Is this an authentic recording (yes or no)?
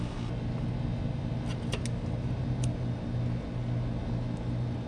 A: yes